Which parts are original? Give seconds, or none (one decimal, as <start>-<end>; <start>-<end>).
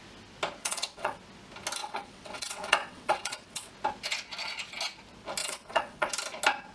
0.0-0.6; 1.2-1.8; 3.7-5.4; 6.1-6.7